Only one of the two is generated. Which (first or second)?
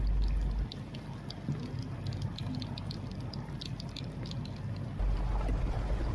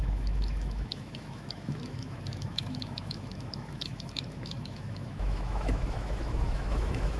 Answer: second